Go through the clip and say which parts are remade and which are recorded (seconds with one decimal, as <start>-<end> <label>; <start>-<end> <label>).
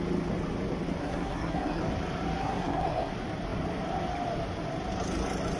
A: 0.0-1.0 recorded; 1.0-1.8 remade; 1.8-2.4 recorded; 2.4-3.1 remade; 3.1-5.6 recorded